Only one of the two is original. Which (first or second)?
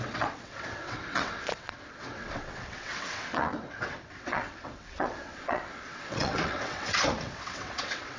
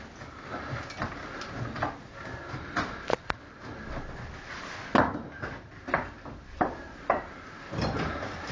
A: second